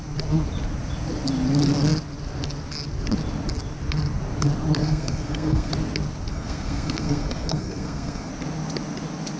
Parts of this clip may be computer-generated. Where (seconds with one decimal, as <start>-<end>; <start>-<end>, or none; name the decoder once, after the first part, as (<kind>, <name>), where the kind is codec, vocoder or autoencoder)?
4.8-5.7 (codec, SNAC); 6.3-8.3